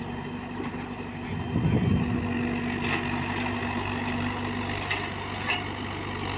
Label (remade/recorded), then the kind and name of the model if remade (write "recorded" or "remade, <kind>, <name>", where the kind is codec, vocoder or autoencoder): recorded